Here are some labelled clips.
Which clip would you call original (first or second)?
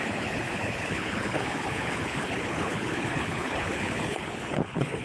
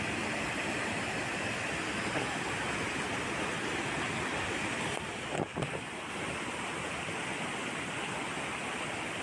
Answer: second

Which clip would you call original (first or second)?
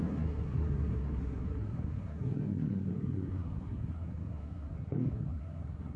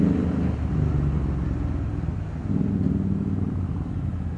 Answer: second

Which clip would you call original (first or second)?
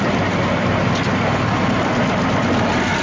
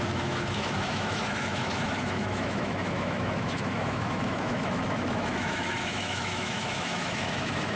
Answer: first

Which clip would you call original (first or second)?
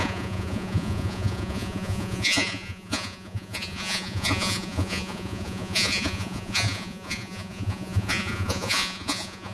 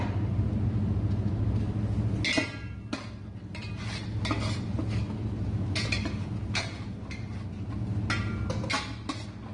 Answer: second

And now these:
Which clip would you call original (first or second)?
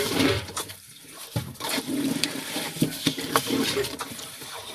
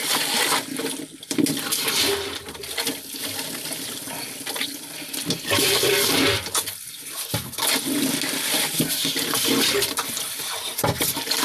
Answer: second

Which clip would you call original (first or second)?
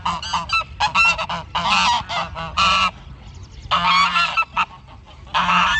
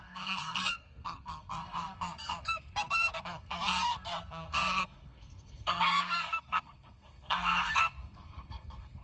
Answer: first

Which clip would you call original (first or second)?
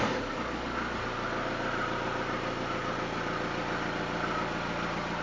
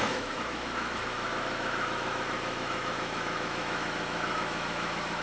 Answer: first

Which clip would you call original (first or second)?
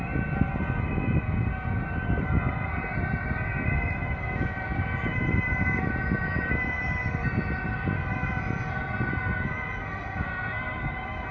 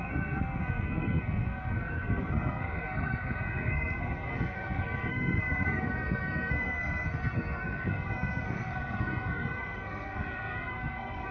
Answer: first